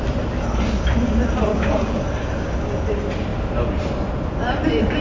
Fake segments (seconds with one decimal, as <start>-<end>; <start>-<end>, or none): 1.5-2.0